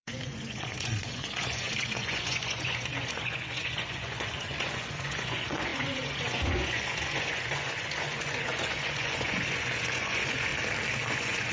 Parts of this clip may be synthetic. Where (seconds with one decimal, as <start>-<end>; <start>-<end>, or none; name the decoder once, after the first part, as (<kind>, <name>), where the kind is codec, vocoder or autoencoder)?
0.0-10.5 (vocoder, Vocos); 11.1-11.5